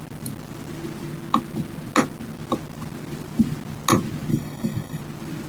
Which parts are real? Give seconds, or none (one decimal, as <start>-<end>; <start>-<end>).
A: 0.0-4.3; 5.0-5.5